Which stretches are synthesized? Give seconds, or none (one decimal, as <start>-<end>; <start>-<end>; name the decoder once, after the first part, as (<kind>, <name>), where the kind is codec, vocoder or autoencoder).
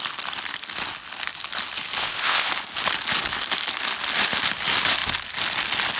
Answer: 2.0-2.5 (codec, ZipCodec)